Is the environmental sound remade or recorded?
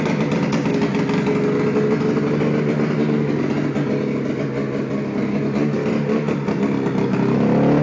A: recorded